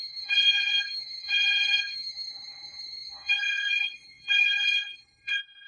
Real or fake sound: fake